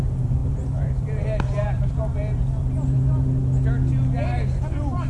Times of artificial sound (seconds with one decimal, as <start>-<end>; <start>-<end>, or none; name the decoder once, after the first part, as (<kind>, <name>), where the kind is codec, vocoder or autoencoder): 0.0-3.4 (vocoder, BigVGAN v2)